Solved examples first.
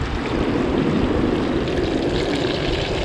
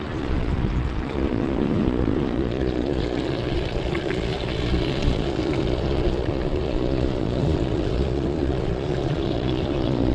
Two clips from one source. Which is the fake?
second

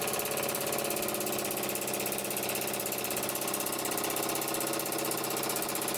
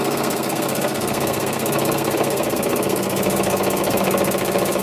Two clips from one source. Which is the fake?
second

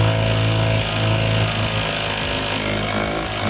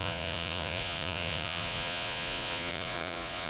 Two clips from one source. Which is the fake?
second